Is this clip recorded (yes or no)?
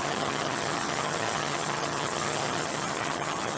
no